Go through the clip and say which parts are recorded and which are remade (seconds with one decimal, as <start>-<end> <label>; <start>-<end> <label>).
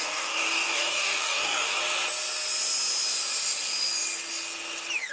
0.0-1.8 remade; 1.8-5.1 recorded